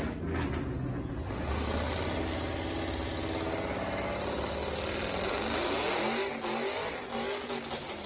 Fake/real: real